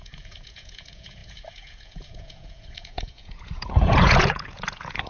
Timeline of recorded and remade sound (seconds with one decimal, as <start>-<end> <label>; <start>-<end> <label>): 0.0-5.1 remade